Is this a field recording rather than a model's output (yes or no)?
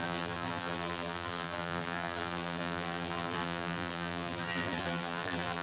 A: no